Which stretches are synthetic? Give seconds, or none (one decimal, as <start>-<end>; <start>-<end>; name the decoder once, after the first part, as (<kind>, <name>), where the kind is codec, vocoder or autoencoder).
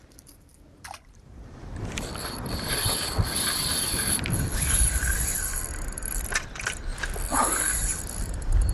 0.0-6.9 (vocoder, BigVGAN v2); 7.9-8.7